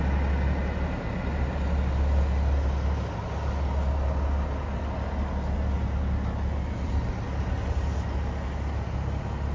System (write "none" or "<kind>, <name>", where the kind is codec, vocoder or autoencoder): none